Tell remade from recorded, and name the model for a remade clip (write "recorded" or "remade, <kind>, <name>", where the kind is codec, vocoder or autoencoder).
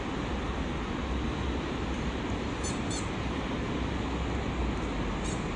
recorded